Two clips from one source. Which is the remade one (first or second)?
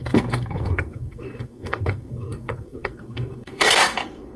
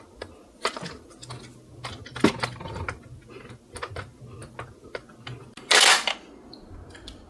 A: first